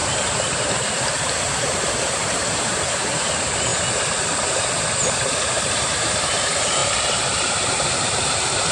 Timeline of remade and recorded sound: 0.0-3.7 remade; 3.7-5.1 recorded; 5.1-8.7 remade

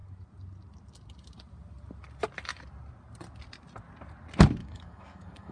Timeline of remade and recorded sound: 0.0-4.6 recorded; 4.6-5.5 remade

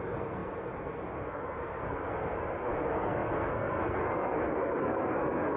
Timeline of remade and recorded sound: 0.0-5.6 remade

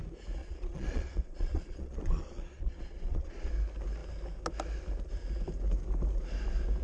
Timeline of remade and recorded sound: 0.0-0.4 recorded; 0.4-3.5 remade; 3.5-6.8 recorded

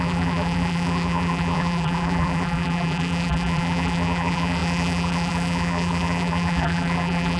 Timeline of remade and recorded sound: 0.0-7.4 remade

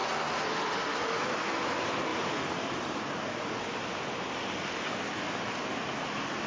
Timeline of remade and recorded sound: 0.0-0.9 recorded; 0.9-1.4 remade; 1.4-6.5 recorded

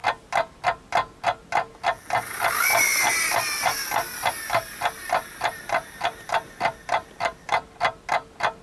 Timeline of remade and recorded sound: 0.0-8.6 recorded

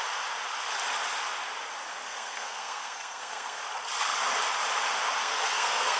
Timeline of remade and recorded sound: 0.0-1.9 recorded; 1.9-3.6 remade; 3.6-5.2 recorded; 5.2-6.0 remade